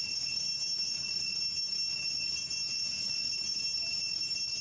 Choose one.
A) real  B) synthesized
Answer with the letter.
A